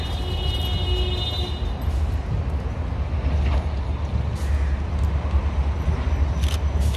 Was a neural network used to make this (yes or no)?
no